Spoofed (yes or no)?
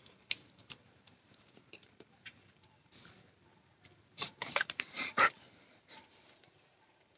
yes